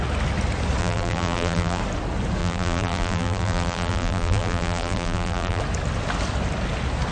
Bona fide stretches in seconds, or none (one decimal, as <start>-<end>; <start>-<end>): 0.0-0.8; 1.8-2.4; 5.6-7.1